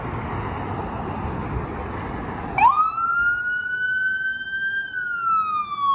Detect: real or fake real